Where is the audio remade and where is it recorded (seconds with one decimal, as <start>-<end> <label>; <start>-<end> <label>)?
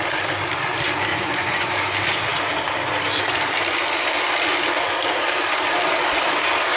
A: 0.0-1.1 recorded; 1.1-1.7 remade; 1.7-6.8 recorded